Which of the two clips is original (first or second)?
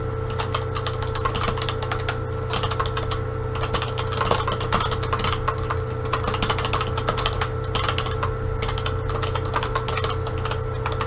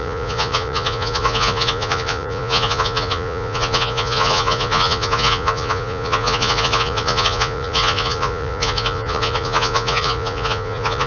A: first